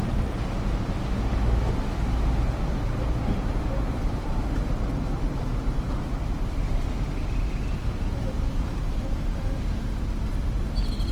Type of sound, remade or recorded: recorded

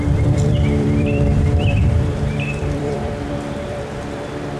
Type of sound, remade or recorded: remade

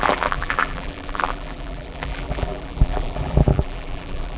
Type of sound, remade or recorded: remade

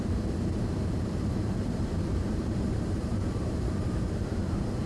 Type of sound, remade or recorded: remade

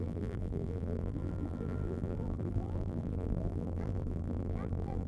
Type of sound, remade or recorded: remade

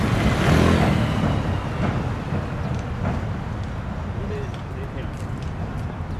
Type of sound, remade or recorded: recorded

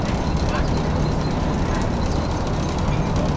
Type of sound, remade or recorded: recorded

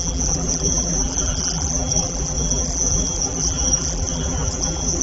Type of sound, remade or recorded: remade